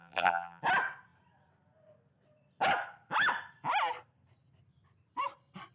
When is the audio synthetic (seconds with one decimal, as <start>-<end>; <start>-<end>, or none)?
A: 0.0-0.6